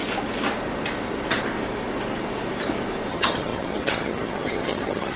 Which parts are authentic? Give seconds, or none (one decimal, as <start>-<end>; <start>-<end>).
0.0-3.1